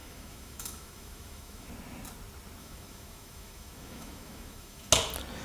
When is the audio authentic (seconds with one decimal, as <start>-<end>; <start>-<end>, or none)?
1.7-2.6; 4.9-5.4